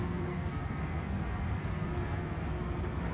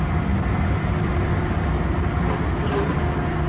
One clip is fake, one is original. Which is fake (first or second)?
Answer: first